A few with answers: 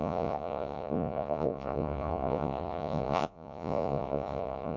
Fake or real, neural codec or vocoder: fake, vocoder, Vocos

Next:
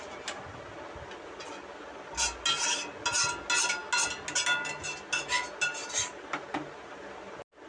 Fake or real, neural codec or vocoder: real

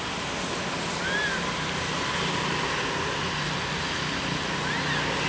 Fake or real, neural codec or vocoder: real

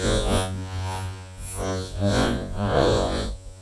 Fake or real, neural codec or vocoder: fake, vocoder, Vocos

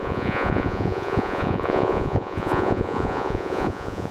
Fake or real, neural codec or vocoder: fake, vocoder, Vocos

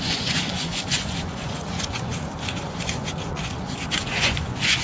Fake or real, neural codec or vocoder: fake, vocoder, Vocos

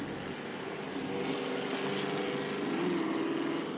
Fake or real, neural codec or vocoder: real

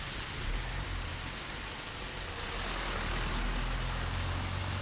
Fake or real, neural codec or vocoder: real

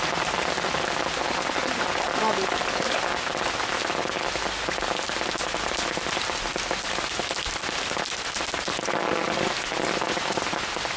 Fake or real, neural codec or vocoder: real